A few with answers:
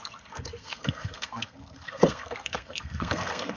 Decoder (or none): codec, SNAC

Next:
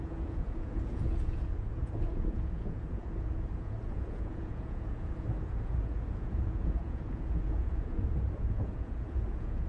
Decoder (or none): vocoder, Vocos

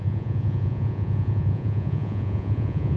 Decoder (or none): vocoder, Vocos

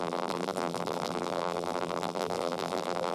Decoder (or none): vocoder, BigVGAN v2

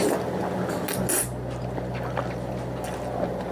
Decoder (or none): none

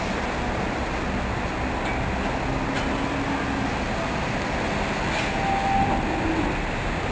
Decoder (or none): none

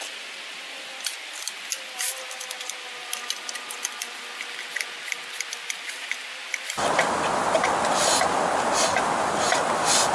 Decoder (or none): none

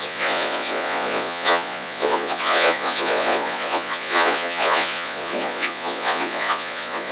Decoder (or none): vocoder, Vocos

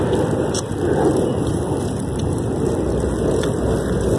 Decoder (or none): none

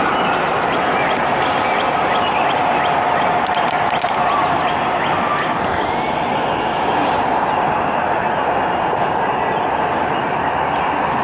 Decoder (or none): none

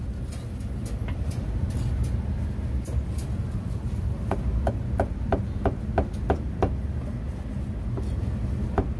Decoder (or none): none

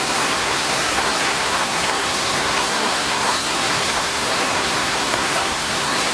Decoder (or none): codec, SNAC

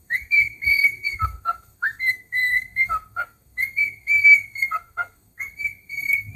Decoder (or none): codec, SNAC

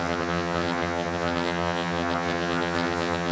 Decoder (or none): vocoder, HiFi-GAN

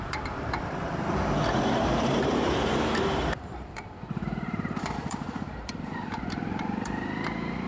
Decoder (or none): vocoder, BigVGAN v2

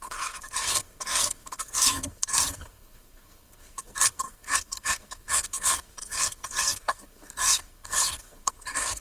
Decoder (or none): codec, SNAC